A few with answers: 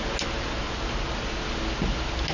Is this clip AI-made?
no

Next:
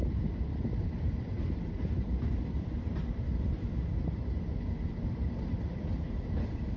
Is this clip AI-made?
yes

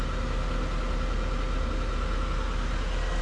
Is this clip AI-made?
no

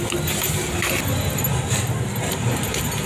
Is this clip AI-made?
no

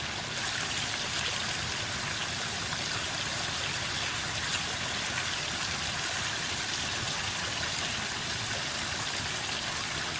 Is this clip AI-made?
no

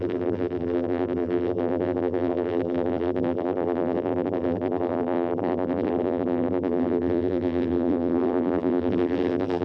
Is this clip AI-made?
yes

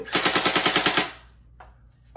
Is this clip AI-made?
no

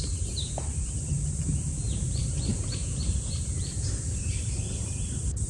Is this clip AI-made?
yes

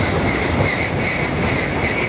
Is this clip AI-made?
no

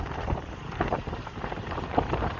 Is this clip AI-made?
yes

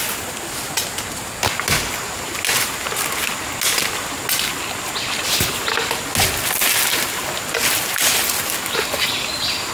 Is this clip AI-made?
no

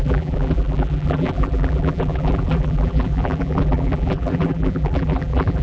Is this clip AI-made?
yes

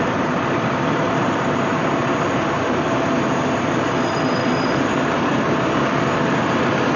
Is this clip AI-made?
yes